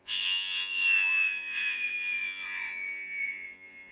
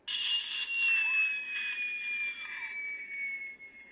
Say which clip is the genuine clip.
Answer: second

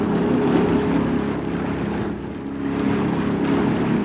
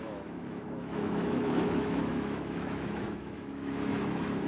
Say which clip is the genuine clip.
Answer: first